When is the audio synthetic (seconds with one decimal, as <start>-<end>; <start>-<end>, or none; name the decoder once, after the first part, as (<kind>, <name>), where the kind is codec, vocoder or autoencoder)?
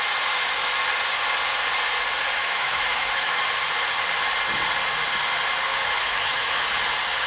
2.4-3.4 (autoencoder, DAC-VAE); 5.7-6.6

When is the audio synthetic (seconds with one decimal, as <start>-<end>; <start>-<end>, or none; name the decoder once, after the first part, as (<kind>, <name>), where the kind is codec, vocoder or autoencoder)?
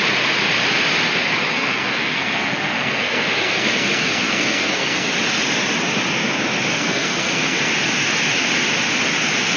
1.5-5.1 (codec, SNAC); 6.7-7.7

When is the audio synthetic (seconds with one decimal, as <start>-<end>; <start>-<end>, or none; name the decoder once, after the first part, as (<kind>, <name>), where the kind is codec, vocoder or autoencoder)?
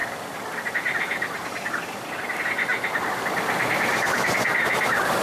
none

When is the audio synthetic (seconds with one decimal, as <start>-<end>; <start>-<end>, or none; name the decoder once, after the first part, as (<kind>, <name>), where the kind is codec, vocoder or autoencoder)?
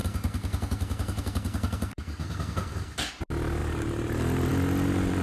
0.0-3.1 (codec, SNAC)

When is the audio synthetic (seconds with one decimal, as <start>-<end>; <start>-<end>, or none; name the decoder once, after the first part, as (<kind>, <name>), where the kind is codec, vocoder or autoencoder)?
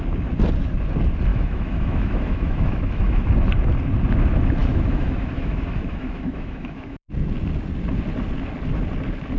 1.3-3.3 (autoencoder, DAC-VAE); 4.6-7.1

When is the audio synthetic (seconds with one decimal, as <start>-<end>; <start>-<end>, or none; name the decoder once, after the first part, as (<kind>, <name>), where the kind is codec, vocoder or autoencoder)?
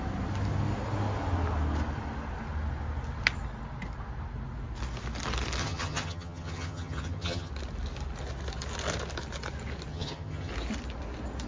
5.6-7.5 (vocoder, HiFi-GAN); 9.9-10.5